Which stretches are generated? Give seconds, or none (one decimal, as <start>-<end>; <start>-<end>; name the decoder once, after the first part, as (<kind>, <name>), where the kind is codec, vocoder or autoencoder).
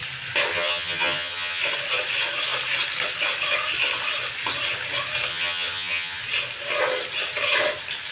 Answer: 0.5-1.6 (vocoder, HiFi-GAN); 5.3-6.2